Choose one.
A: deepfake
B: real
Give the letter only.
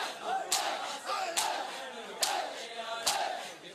B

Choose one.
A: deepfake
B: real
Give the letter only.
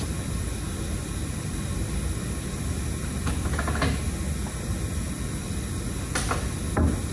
B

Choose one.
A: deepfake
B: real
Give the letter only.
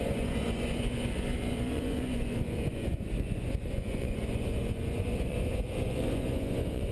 A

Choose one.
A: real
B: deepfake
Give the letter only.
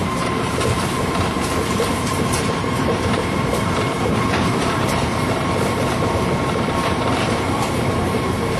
B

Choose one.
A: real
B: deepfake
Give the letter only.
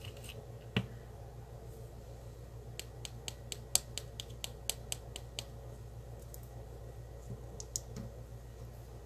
A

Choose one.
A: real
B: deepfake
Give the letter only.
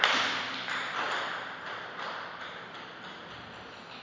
A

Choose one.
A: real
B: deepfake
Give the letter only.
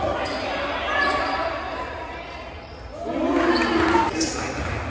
A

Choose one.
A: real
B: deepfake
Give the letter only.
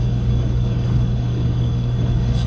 B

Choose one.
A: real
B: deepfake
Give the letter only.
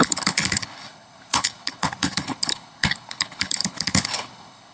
B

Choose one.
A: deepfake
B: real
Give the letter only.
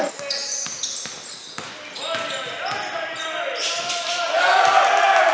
A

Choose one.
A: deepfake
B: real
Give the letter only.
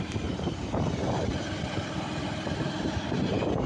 A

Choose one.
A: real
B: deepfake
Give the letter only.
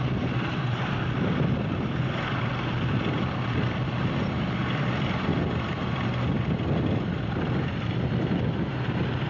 B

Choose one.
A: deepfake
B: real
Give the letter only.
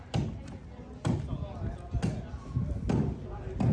B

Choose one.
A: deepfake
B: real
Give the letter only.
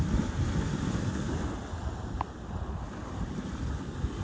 B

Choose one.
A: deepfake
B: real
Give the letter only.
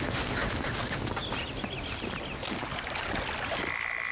B